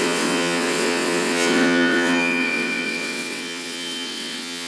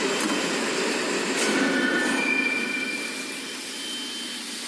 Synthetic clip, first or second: first